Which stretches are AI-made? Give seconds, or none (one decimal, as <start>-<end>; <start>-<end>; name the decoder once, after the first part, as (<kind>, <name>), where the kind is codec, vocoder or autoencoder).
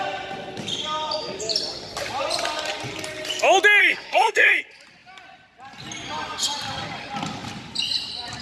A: 3.8-4.6 (codec, SNAC)